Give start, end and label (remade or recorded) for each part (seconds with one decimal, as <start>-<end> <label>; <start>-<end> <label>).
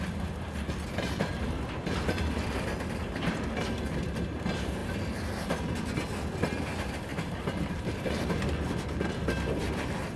0.0-7.1 recorded; 7.1-8.3 remade; 8.3-10.2 recorded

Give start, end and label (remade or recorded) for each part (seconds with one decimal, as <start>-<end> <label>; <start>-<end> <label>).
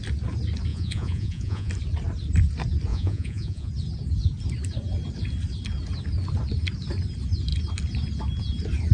0.0-0.7 recorded; 0.7-1.7 remade; 1.7-2.9 recorded; 2.9-3.7 remade; 3.7-8.9 recorded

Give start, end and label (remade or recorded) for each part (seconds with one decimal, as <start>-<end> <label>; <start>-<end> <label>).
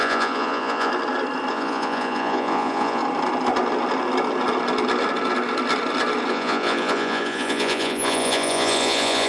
0.0-0.9 remade; 0.9-1.5 recorded; 1.5-3.0 remade; 3.0-6.3 recorded; 6.3-9.3 remade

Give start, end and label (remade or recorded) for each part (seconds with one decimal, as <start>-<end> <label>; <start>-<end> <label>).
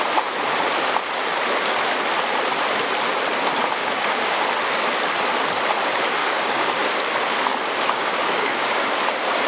0.0-3.8 recorded; 3.8-4.4 remade; 4.4-6.2 recorded; 6.2-6.8 remade; 6.8-7.5 recorded; 7.5-8.9 remade; 8.9-9.5 recorded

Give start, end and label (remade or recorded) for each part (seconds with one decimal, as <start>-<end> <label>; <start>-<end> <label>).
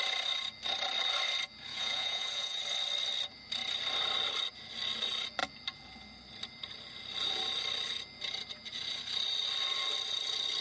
0.0-1.7 recorded; 1.7-2.6 remade; 2.6-10.6 recorded